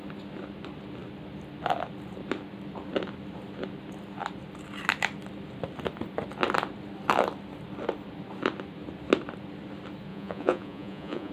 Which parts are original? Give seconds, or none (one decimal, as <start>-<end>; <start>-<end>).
0.0-10.1